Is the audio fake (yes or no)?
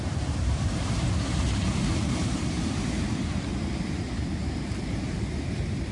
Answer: yes